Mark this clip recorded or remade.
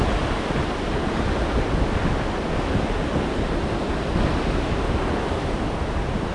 recorded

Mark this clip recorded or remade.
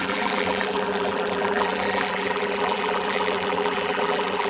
remade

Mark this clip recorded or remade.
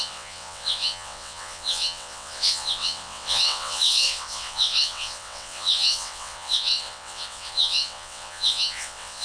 remade